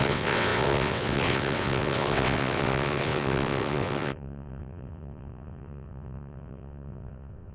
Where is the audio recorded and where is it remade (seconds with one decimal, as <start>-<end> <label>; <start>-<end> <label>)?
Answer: 0.0-7.5 remade

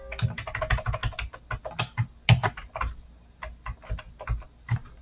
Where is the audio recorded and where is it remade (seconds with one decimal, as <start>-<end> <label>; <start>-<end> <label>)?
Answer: 0.0-5.0 recorded

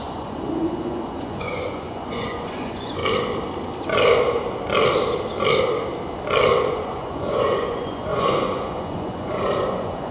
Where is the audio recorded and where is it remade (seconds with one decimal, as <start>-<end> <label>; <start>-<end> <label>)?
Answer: 0.0-3.0 remade; 3.0-6.7 recorded; 6.7-10.1 remade

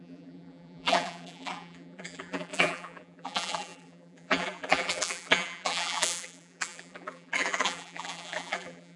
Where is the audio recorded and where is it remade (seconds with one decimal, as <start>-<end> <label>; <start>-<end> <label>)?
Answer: 0.0-9.0 remade